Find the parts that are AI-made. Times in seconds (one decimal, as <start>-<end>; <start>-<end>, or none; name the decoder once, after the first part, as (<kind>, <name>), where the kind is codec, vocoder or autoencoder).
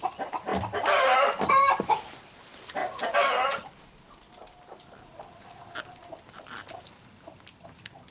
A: none